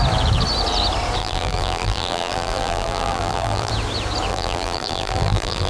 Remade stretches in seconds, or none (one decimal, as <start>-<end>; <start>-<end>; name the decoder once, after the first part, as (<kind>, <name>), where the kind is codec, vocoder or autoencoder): 1.2-3.7 (vocoder, BigVGAN v2); 4.3-5.7